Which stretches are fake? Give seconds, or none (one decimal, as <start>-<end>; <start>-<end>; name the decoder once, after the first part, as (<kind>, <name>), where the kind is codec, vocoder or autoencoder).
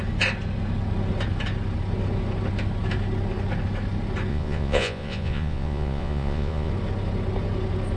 4.3-6.7 (vocoder, Vocos)